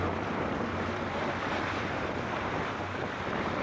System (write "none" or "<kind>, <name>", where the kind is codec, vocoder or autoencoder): vocoder, BigVGAN v2